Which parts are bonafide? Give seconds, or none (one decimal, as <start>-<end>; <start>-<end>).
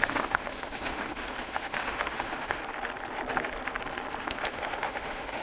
2.6-4.2